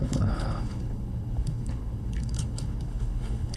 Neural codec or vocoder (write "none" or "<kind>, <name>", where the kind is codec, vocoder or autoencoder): codec, HILCodec